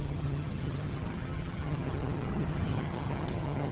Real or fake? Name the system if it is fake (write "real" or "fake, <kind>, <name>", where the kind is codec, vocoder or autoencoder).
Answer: fake, vocoder, HiFi-GAN